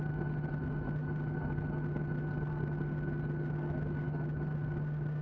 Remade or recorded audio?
recorded